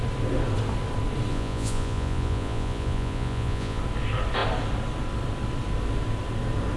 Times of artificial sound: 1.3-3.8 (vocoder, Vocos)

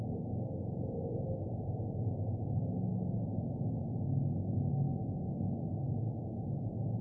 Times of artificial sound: none

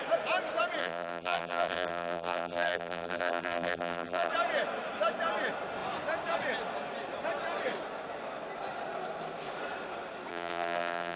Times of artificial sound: 0.8-4.3 (vocoder, BigVGAN v2); 10.3-11.2